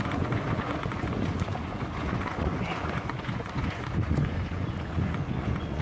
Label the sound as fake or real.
fake